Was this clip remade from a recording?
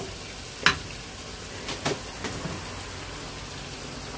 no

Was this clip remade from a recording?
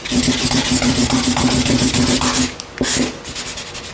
no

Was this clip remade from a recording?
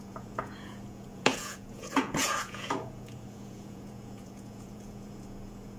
yes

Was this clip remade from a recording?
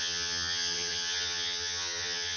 yes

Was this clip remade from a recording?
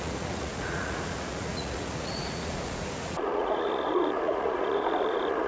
yes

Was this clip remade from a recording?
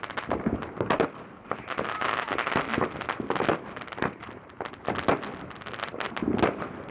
no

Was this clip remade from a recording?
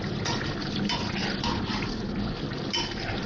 yes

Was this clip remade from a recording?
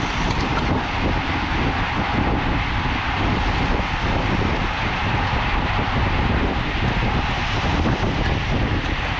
no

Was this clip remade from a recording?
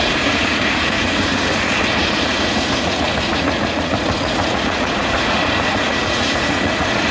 yes